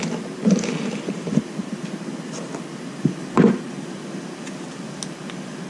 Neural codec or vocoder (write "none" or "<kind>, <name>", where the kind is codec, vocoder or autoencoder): none